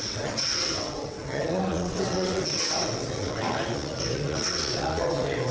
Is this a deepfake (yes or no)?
yes